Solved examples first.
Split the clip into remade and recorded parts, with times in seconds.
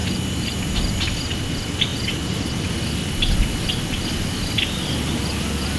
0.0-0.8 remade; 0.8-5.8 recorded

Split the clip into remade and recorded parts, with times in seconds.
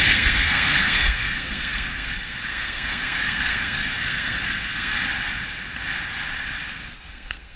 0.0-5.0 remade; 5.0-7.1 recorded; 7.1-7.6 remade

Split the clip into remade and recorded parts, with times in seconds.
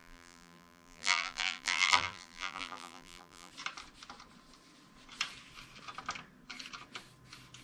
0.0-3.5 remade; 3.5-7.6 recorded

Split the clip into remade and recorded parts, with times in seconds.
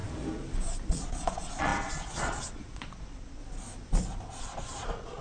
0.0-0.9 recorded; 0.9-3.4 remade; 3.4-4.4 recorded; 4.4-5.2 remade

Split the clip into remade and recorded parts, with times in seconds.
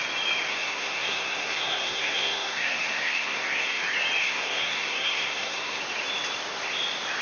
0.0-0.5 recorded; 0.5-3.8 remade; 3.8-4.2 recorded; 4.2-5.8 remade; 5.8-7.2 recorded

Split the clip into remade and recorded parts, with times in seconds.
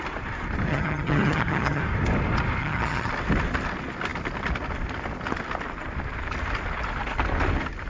0.0-0.7 recorded; 0.7-1.8 remade; 1.8-2.6 recorded; 2.6-3.1 remade; 3.1-7.9 recorded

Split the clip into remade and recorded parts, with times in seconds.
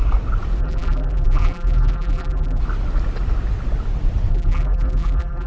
0.0-0.6 recorded; 0.6-2.6 remade; 2.6-4.3 recorded; 4.3-5.5 remade